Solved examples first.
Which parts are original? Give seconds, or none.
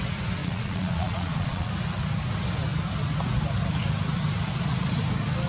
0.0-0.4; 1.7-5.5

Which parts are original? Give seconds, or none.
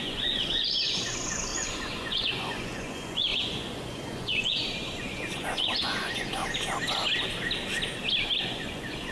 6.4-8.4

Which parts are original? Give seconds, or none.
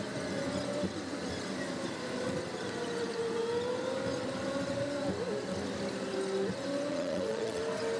0.0-6.9; 7.6-8.0